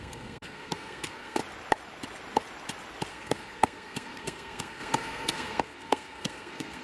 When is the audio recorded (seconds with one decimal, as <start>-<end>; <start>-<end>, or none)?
1.4-3.1